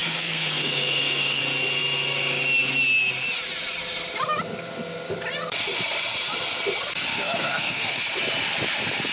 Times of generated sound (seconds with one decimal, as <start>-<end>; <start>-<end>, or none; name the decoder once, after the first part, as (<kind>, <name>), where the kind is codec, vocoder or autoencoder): 0.0-1.4 (codec, SNAC); 7.1-8.0